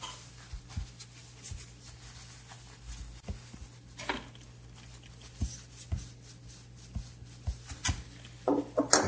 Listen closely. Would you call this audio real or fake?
real